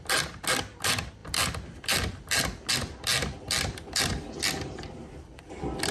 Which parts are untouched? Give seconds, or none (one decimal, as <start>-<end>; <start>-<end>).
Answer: none